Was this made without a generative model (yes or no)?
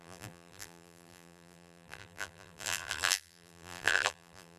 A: no